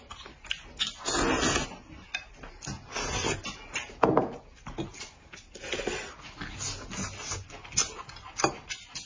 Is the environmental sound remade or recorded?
recorded